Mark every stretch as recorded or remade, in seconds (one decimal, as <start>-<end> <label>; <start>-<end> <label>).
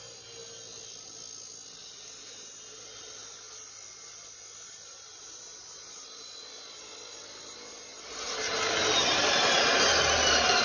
0.0-10.6 recorded